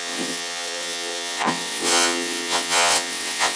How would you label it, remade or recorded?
remade